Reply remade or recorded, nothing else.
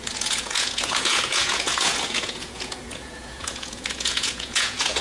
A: remade